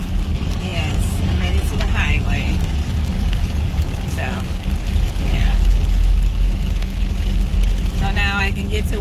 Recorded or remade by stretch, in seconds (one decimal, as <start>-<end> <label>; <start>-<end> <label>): 0.0-7.5 remade; 7.5-8.4 recorded; 8.4-9.0 remade